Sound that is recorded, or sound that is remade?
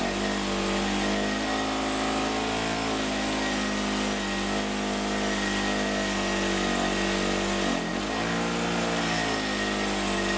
recorded